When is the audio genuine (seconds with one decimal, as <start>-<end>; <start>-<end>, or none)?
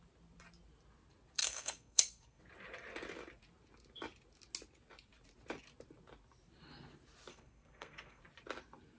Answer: 0.0-1.4; 2.4-7.3; 8.2-9.0